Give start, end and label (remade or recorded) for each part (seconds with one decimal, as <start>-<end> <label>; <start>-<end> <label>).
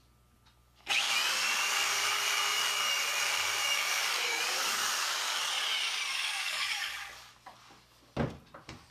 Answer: 0.0-0.6 recorded; 0.6-5.5 remade; 5.5-6.1 recorded; 6.1-7.3 remade; 7.3-8.9 recorded